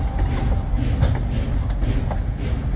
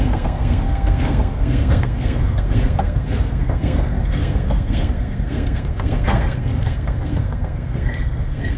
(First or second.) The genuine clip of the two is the first